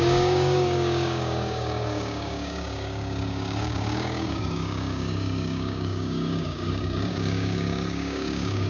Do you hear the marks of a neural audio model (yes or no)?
yes